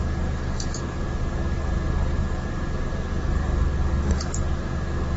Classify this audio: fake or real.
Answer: real